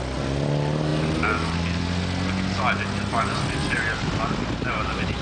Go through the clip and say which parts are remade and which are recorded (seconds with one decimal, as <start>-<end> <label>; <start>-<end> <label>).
0.0-5.2 recorded